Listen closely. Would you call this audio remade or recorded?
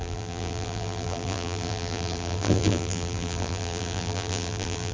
remade